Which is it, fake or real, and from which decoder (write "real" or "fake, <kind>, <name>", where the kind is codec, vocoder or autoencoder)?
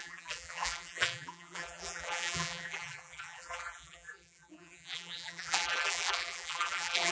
fake, vocoder, BigVGAN v2